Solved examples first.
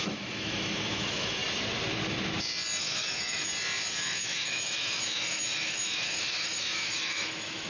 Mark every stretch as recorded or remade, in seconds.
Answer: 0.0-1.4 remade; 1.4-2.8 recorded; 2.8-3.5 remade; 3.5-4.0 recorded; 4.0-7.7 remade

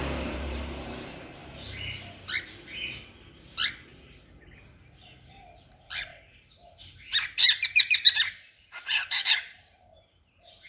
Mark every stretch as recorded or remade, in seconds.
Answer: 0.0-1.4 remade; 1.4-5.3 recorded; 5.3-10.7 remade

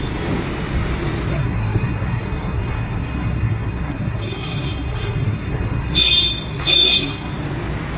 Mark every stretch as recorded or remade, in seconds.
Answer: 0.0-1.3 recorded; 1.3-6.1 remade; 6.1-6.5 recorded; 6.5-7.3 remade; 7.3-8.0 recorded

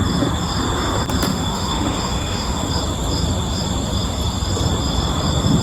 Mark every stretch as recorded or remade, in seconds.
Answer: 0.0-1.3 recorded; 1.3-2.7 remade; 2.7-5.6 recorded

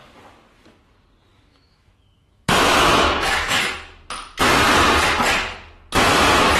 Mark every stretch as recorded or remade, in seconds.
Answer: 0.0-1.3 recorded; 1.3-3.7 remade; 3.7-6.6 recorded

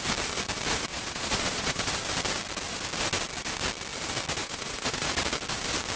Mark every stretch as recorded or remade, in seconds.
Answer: 0.0-0.9 recorded; 0.9-1.9 remade; 1.9-4.4 recorded; 4.4-5.1 remade; 5.1-6.0 recorded